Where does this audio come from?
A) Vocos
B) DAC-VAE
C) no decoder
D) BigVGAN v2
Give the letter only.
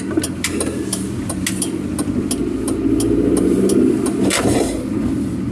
C